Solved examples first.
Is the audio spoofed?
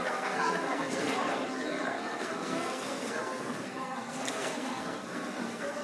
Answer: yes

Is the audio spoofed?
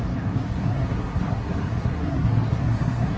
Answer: yes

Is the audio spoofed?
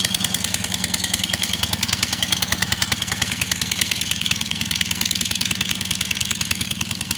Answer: yes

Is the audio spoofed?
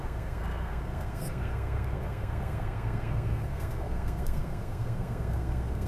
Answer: yes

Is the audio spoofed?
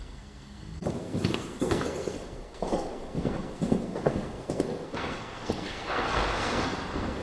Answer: yes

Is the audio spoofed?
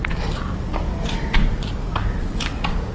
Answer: no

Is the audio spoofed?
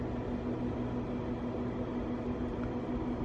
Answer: no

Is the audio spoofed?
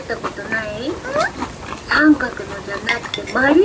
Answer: no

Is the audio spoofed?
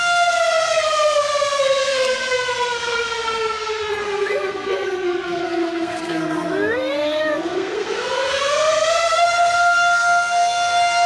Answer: yes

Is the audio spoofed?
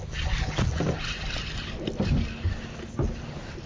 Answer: no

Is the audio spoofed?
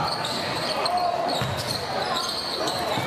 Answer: no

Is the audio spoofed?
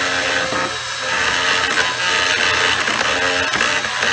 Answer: no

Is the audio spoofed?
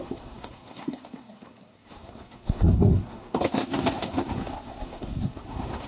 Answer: yes